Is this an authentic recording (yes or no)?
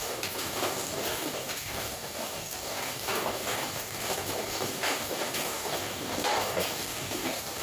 no